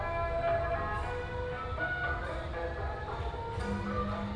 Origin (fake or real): real